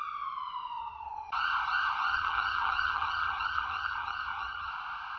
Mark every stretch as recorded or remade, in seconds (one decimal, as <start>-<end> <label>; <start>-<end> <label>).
0.0-0.8 recorded; 0.8-1.3 remade; 1.3-2.1 recorded; 2.1-4.7 remade; 4.7-5.2 recorded